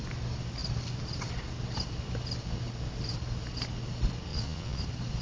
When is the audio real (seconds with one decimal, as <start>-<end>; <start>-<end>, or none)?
0.0-4.3; 4.8-5.2

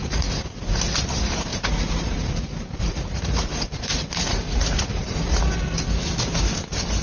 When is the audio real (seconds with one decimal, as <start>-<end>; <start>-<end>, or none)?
0.8-1.5; 5.4-7.0